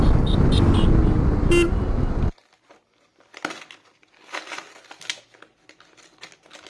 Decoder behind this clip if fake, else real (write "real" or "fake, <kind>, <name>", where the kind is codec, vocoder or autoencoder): real